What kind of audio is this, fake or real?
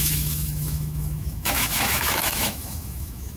fake